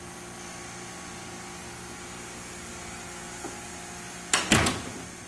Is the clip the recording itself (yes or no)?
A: yes